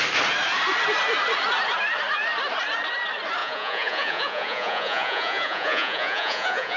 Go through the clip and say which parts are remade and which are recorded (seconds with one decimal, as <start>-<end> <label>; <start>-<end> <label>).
0.0-3.4 recorded; 3.4-6.8 remade